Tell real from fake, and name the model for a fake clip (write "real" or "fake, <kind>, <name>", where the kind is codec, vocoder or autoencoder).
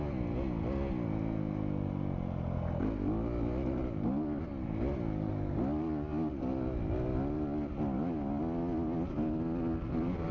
real